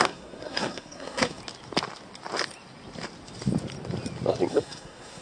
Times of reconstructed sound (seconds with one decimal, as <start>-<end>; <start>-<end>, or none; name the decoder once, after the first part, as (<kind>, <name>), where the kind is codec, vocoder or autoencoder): 0.0-1.4 (codec, SNAC); 4.5-5.2